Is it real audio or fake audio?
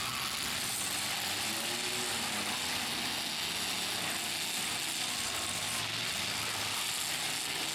real